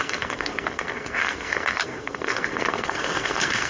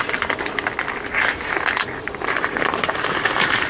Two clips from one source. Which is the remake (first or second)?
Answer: first